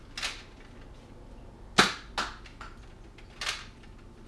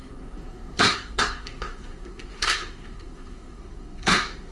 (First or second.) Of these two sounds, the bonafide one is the first